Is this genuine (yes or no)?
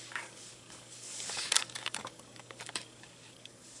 no